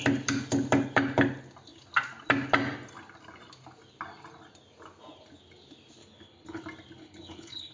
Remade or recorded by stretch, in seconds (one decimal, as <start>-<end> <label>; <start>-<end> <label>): 0.0-6.0 recorded; 6.0-6.6 remade; 6.6-7.0 recorded; 7.0-7.7 remade